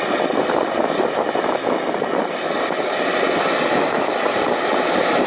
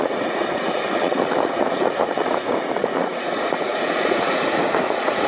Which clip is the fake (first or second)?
second